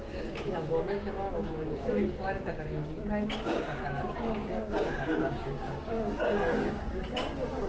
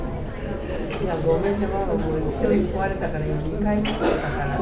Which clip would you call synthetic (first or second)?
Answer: first